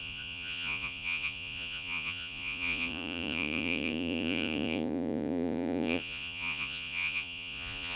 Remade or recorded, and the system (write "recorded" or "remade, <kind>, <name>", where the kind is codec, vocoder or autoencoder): remade, vocoder, Vocos